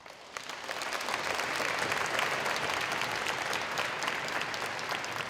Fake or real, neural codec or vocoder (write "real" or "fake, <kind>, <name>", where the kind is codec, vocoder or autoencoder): fake, vocoder, BigVGAN v2